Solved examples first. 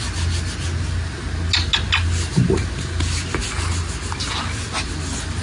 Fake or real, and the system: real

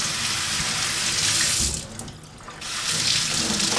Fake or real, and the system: real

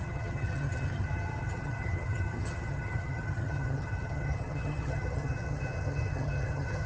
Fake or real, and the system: fake, vocoder, HiFi-GAN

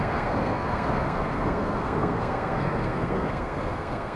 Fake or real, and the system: fake, codec, SNAC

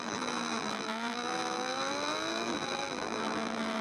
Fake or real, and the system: fake, vocoder, BigVGAN v2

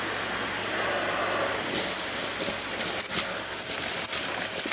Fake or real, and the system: real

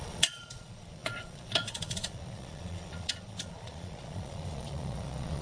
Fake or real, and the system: fake, vocoder, Vocos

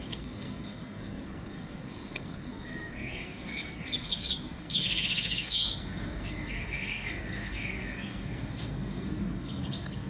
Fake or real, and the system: fake, codec, SNAC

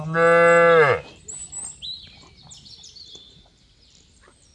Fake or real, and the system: real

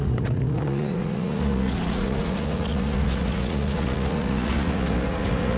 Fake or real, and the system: fake, vocoder, Vocos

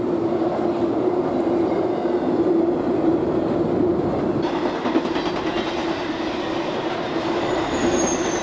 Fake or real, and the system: real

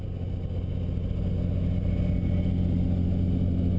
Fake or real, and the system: real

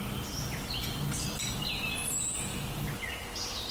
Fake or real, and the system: real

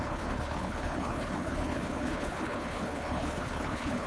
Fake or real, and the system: fake, codec, HILCodec